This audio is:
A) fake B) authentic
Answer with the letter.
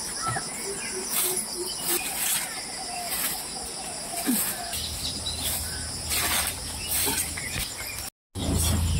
B